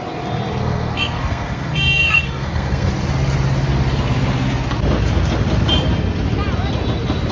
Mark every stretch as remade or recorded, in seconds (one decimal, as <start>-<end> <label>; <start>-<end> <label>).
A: 0.0-0.6 recorded; 0.6-2.9 remade; 2.9-7.3 recorded